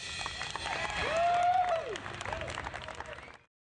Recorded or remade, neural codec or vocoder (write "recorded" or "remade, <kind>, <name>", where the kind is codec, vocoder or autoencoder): recorded